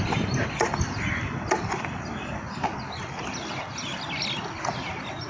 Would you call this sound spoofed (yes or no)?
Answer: no